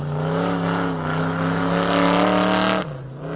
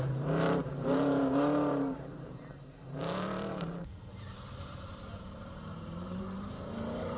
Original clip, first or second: first